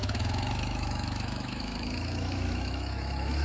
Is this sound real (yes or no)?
no